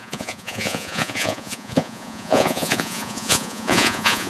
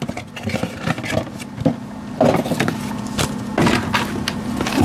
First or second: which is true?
second